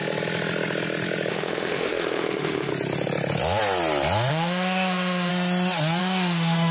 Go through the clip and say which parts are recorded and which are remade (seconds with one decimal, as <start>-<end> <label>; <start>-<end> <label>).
0.0-1.3 recorded; 1.3-2.7 remade; 2.7-4.3 recorded; 4.3-5.3 remade; 5.3-6.0 recorded; 6.0-6.7 remade

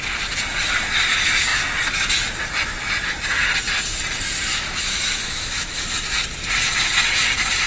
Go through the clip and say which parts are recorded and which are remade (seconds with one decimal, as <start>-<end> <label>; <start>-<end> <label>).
0.0-4.5 recorded; 4.5-5.8 remade; 5.8-7.7 recorded

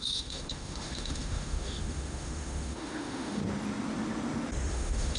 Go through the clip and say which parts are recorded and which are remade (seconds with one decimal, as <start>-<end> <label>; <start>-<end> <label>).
0.0-3.4 remade; 3.4-4.7 recorded; 4.7-5.2 remade

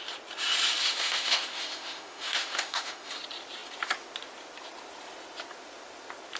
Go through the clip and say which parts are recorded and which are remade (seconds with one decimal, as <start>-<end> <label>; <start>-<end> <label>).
0.0-0.8 recorded; 0.8-3.1 remade; 3.1-6.4 recorded

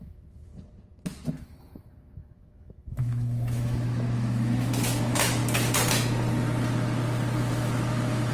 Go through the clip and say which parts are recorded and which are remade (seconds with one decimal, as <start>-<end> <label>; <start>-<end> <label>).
0.0-0.5 remade; 0.5-1.4 recorded; 1.4-5.4 remade; 5.4-7.4 recorded; 7.4-8.3 remade

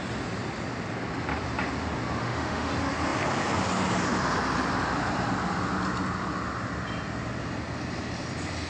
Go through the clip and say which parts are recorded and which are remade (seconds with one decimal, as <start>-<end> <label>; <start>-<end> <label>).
0.0-2.2 recorded; 2.2-2.7 remade; 2.7-8.7 recorded

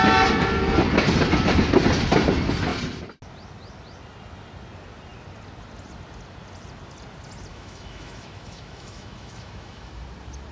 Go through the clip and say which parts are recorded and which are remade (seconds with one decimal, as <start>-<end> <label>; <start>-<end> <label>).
0.0-7.5 recorded; 7.5-9.9 remade; 9.9-10.5 recorded

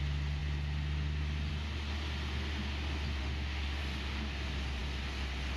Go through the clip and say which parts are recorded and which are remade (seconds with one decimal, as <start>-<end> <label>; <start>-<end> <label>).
0.0-3.2 recorded; 3.2-3.8 remade; 3.8-5.6 recorded